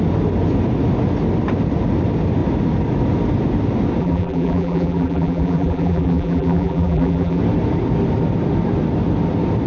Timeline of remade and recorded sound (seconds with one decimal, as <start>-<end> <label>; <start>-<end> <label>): 0.0-4.0 recorded; 4.0-7.4 remade; 7.4-9.7 recorded